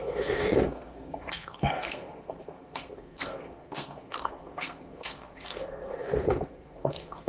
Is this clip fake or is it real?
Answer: fake